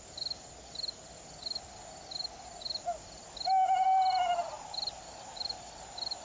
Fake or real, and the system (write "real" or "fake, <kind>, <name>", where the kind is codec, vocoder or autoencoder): real